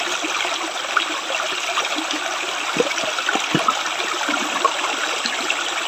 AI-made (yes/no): no